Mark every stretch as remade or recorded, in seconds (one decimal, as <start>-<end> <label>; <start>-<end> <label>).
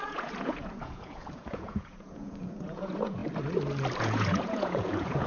0.0-3.2 remade; 3.2-4.0 recorded; 4.0-5.3 remade